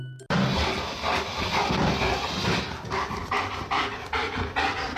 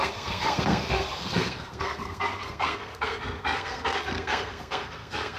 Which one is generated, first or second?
second